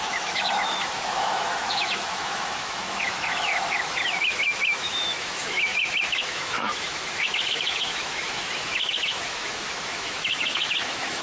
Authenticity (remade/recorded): remade